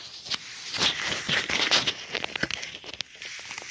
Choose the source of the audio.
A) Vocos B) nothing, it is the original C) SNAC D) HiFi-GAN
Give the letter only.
B